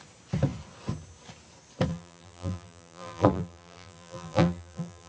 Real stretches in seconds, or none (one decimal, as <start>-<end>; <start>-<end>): 0.0-1.9